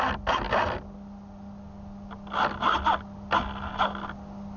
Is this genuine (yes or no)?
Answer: yes